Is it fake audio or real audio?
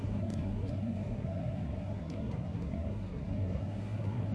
fake